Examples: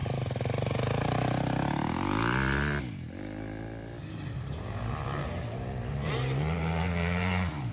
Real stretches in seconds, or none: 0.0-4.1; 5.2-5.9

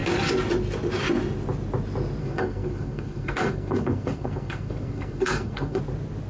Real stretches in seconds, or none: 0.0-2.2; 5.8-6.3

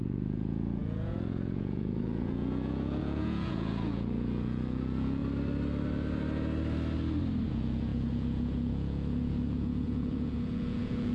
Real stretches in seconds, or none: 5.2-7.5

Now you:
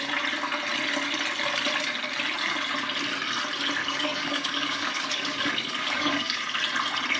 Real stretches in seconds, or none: 0.0-3.8; 6.4-7.2